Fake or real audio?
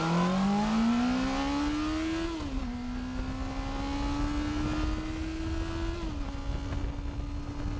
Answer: real